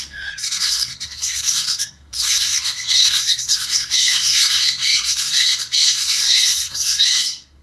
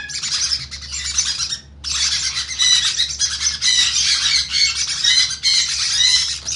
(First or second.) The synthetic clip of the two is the first